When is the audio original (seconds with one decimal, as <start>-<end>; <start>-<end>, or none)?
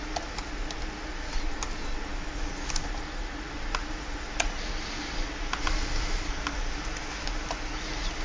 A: 0.0-8.2